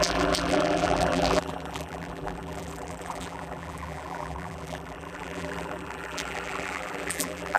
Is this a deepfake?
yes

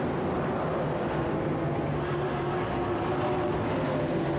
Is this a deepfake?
no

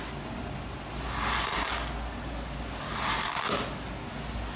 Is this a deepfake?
no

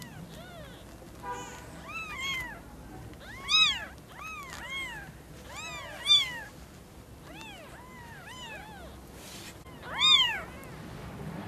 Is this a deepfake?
no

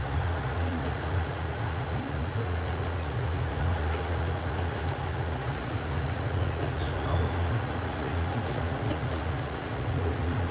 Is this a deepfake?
yes